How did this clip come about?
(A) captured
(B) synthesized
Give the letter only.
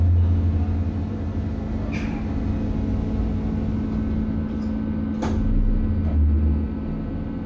A